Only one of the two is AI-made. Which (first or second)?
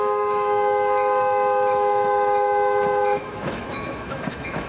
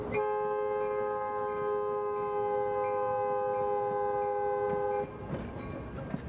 first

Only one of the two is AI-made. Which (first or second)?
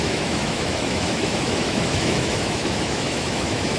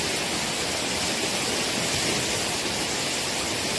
first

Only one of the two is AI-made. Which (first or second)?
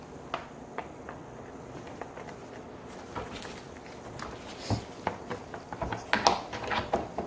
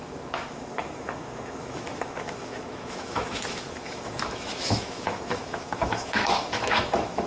second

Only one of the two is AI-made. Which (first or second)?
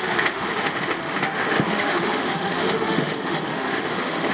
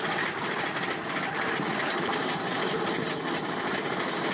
first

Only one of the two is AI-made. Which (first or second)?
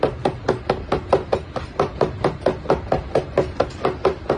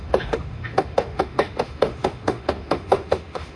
second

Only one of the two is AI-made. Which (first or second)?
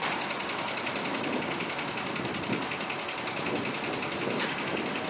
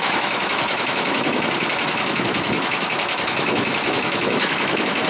second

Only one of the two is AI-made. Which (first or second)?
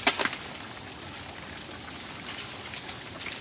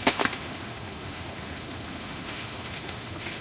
second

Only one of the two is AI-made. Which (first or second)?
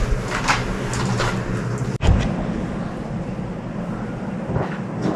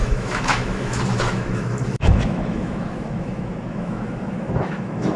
second